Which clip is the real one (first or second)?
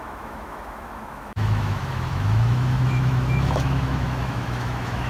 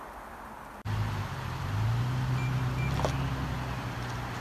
second